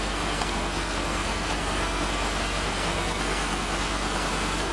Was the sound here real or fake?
fake